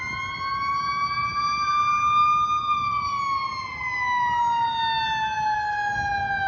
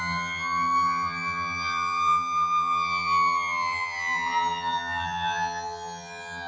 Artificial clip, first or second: second